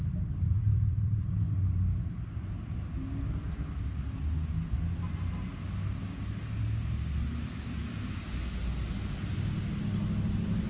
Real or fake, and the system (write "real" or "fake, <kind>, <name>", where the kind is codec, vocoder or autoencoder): real